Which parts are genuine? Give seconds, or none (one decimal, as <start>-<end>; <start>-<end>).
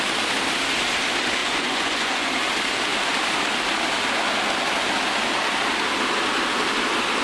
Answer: 0.0-1.4; 2.3-7.2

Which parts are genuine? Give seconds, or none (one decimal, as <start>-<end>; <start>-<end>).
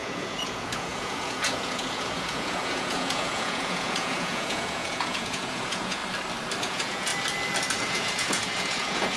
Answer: 6.0-6.6; 7.1-7.9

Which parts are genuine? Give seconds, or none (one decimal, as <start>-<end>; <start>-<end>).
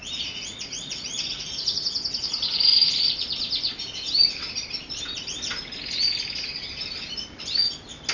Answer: 1.6-8.1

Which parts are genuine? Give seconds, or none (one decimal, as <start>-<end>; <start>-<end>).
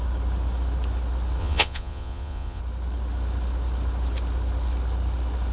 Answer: 0.0-1.4; 2.6-5.5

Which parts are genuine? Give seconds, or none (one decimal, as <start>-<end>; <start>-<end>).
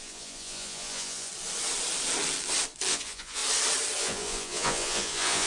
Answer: 1.3-2.9; 3.4-4.0